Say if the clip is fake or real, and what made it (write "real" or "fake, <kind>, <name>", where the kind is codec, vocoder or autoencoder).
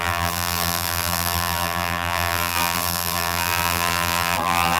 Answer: fake, vocoder, BigVGAN v2